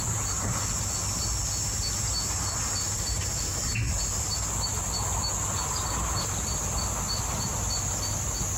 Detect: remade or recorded recorded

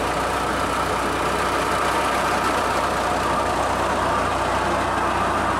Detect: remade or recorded recorded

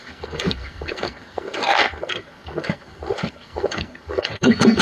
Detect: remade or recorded remade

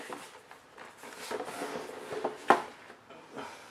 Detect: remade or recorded recorded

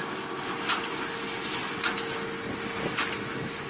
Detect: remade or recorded recorded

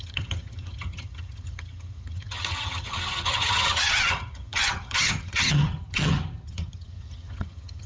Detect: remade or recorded remade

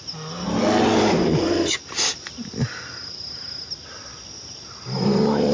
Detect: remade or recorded recorded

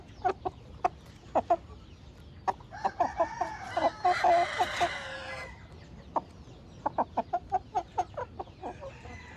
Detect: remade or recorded recorded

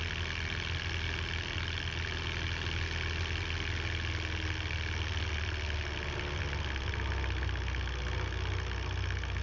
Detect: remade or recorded recorded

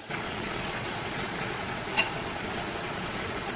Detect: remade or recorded remade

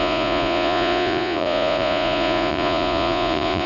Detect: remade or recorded remade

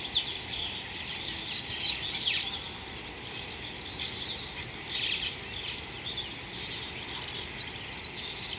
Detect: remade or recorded recorded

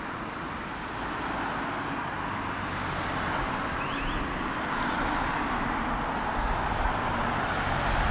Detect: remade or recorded recorded